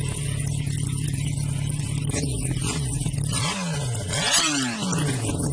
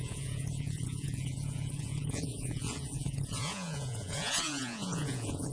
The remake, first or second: second